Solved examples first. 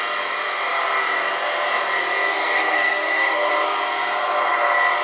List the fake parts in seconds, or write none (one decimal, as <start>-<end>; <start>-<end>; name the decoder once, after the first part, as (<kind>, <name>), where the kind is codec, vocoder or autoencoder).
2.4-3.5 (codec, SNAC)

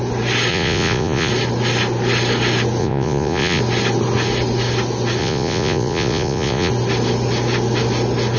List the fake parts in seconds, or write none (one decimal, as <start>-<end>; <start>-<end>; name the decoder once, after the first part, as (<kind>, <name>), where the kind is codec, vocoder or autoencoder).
0.5-1.3 (vocoder, Vocos); 2.8-3.6; 5.2-6.7

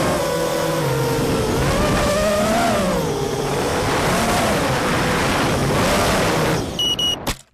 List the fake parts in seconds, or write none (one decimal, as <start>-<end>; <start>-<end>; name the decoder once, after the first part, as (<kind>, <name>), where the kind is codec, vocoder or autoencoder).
0.0-0.5 (vocoder, BigVGAN v2); 3.2-5.6; 6.2-7.5

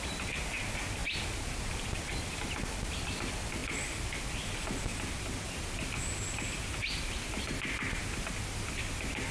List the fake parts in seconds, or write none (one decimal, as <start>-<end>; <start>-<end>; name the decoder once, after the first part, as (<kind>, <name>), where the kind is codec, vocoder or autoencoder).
3.6-4.4 (vocoder, BigVGAN v2)